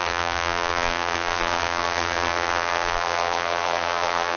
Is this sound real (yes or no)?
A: no